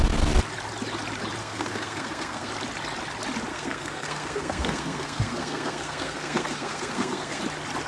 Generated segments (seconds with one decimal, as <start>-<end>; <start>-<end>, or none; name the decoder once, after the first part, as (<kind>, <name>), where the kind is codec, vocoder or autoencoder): 1.4-2.5 (codec, SNAC); 3.5-7.4